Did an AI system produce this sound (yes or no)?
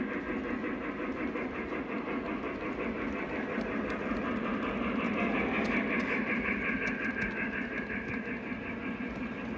no